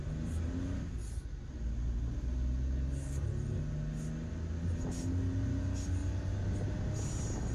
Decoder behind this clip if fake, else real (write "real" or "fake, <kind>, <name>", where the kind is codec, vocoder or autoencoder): real